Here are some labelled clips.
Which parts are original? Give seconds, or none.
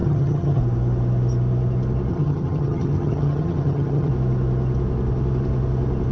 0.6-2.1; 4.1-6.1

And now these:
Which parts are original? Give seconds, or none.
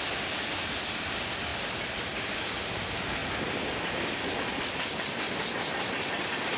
0.0-6.6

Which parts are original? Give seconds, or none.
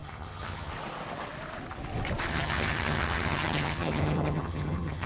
0.7-2.3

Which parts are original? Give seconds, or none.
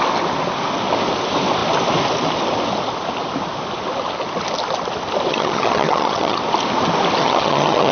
0.0-5.3; 6.4-7.2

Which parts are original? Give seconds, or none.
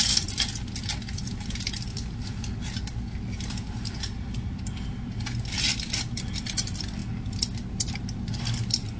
0.0-9.0